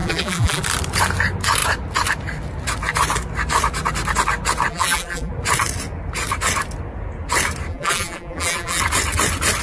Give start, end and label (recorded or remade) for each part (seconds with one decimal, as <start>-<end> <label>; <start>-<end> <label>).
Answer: 0.0-0.6 remade; 0.6-4.7 recorded; 4.7-5.3 remade; 5.3-7.7 recorded; 7.7-8.8 remade; 8.8-9.6 recorded